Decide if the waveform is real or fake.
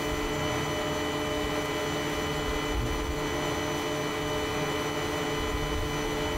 real